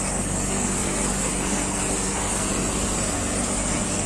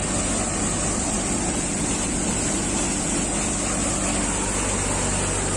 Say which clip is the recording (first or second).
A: second